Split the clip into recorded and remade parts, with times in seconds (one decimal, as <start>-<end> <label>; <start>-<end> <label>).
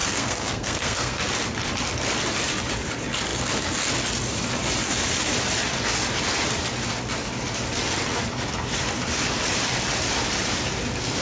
0.0-1.2 remade; 1.2-11.2 recorded